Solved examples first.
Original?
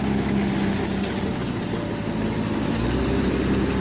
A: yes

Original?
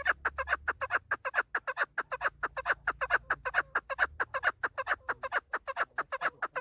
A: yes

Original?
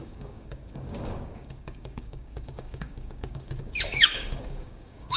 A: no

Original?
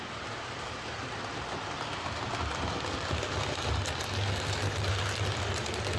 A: yes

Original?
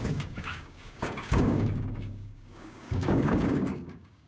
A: no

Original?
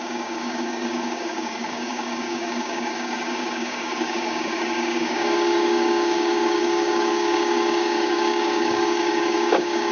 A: no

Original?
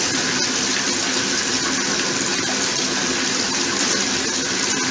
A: yes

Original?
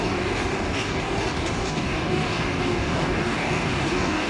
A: no